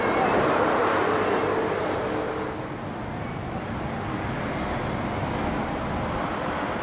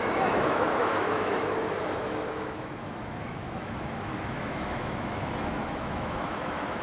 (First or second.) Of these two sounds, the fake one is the second